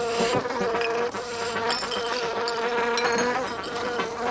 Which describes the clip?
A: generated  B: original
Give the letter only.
B